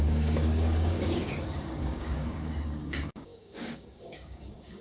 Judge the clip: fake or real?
fake